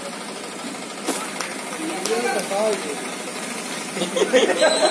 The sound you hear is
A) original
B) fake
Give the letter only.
A